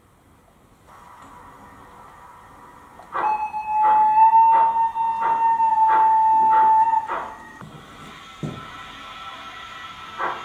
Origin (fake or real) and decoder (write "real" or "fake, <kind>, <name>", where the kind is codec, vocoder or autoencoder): real